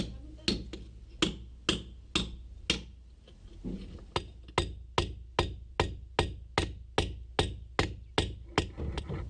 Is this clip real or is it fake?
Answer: real